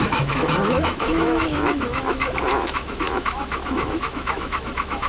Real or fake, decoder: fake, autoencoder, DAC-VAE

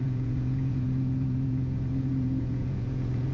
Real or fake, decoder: fake, vocoder, Vocos